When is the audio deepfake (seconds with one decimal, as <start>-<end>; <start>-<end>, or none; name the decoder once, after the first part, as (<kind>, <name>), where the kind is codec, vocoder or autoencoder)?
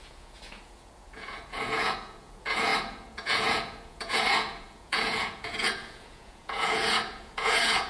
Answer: 0.0-7.9 (vocoder, Vocos)